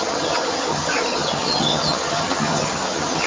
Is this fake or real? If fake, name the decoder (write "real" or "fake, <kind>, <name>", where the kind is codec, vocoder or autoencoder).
fake, vocoder, HiFi-GAN